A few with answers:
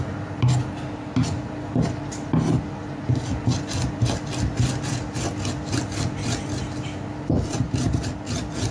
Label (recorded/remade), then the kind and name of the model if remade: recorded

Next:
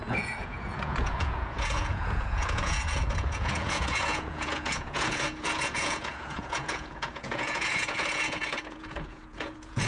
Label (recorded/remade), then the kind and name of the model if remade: remade, vocoder, Vocos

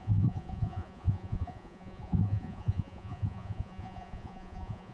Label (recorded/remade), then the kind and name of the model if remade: remade, vocoder, Vocos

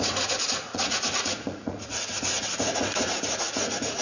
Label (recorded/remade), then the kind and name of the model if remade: remade, vocoder, Vocos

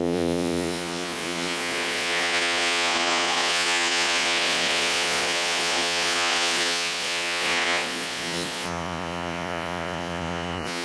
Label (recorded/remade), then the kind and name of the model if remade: remade, vocoder, Vocos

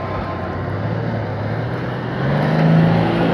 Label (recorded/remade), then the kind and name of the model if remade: recorded